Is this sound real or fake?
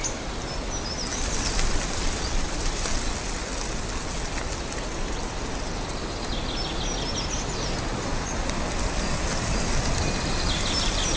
real